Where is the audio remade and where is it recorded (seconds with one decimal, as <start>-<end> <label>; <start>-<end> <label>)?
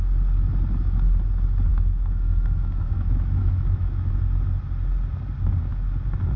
0.0-1.7 recorded; 1.7-4.1 remade; 4.1-6.4 recorded